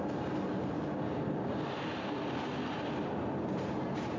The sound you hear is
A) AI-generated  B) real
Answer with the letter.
B